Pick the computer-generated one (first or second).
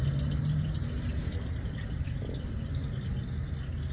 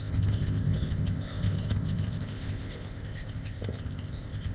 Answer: second